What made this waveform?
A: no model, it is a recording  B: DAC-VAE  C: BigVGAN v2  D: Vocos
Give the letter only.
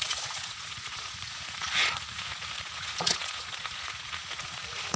D